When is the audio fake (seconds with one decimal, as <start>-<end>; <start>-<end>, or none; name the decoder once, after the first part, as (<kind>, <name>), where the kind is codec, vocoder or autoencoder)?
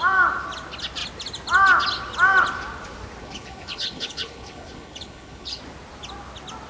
3.2-5.6 (codec, HILCodec)